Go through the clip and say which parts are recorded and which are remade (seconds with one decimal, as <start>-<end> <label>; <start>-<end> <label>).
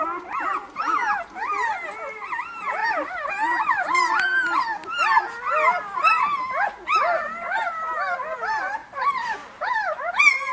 0.0-2.8 recorded; 2.8-3.3 remade; 3.3-8.8 recorded; 8.8-10.1 remade; 10.1-10.5 recorded